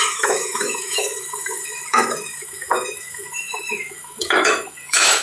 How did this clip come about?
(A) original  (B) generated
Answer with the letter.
B